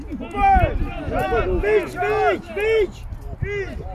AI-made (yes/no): no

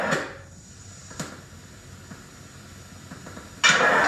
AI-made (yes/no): no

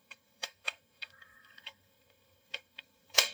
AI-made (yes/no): yes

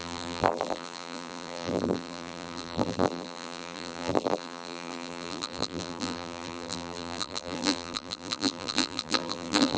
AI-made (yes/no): yes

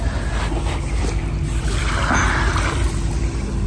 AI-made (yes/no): no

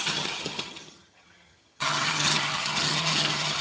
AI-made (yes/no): yes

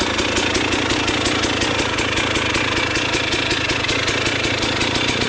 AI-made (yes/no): no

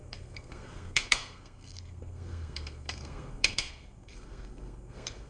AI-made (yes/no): yes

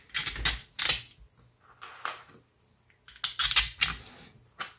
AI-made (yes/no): no